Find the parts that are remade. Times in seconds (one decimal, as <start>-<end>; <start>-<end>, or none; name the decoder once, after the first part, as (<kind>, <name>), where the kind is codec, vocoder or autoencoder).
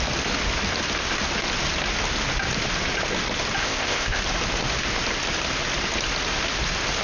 3.6-4.2 (codec, ZipCodec)